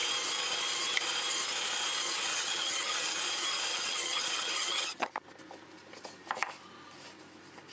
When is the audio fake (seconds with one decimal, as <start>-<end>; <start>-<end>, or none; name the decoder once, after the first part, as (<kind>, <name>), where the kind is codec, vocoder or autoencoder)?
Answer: 2.3-3.2 (vocoder, HiFi-GAN); 3.7-5.1

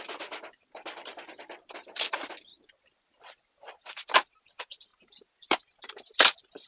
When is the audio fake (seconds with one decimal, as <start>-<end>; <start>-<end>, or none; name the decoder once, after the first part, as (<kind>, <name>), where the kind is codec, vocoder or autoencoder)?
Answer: none

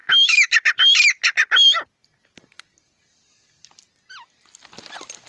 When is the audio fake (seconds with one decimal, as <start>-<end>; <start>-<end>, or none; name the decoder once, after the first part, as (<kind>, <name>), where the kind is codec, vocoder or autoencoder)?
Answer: 0.0-0.5 (autoencoder, DAC-VAE)

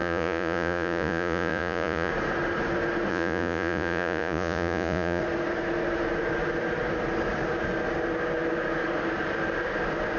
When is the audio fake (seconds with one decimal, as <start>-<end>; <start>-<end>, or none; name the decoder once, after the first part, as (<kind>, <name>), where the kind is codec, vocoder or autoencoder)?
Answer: 0.0-2.1 (vocoder, Vocos); 3.1-5.2

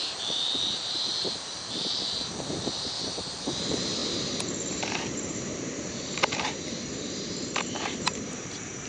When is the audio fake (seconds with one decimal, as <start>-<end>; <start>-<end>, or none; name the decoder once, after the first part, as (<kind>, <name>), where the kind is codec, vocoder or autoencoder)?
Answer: 0.0-8.9 (vocoder, BigVGAN v2)

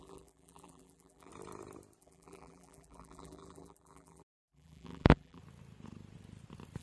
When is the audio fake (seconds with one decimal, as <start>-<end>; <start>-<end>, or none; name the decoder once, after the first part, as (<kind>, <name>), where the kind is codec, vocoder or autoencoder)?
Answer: 0.0-1.3 (vocoder, BigVGAN v2); 2.0-5.4

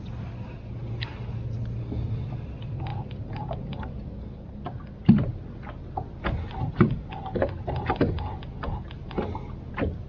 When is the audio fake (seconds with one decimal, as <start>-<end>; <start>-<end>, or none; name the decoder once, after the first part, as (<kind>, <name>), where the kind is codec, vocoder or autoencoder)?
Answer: none

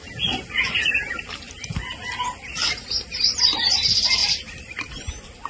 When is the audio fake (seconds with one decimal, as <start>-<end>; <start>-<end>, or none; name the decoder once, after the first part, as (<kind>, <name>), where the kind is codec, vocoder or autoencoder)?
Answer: 4.2-4.9 (vocoder, BigVGAN v2)